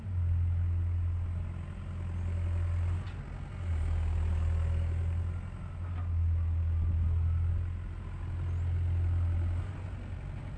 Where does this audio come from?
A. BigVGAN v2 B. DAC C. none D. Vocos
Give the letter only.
C